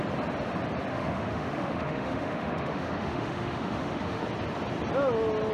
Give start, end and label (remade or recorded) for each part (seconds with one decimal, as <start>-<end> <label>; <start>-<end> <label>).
0.0-0.9 recorded; 0.9-4.2 remade; 4.2-5.5 recorded